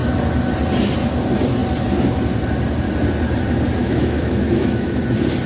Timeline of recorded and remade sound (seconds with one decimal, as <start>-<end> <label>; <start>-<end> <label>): 0.0-3.8 recorded; 3.8-5.0 remade; 5.0-5.5 recorded